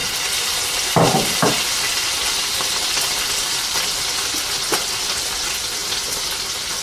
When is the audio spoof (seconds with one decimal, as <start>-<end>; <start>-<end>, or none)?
0.0-4.1